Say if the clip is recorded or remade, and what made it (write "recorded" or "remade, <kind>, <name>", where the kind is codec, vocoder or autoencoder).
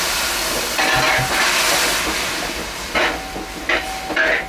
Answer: recorded